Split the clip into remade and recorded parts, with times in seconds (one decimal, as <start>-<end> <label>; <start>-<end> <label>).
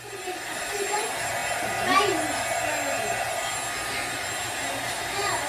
0.0-5.5 recorded